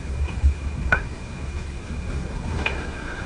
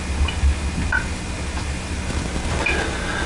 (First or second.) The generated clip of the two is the first